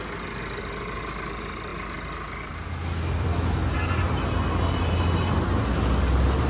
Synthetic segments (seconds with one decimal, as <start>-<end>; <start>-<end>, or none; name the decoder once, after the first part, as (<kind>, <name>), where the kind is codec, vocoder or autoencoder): none